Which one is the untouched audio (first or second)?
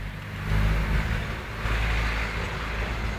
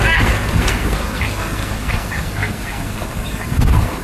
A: first